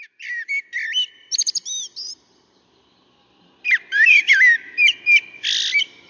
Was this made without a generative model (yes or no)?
no